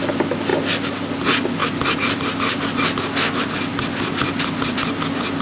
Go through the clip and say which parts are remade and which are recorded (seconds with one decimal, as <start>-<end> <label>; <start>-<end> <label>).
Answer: 0.0-5.4 recorded